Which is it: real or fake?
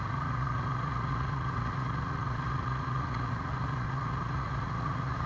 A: fake